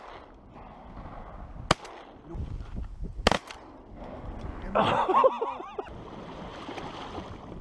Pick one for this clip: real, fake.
real